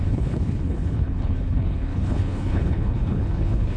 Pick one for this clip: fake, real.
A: fake